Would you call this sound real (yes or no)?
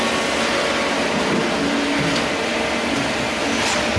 yes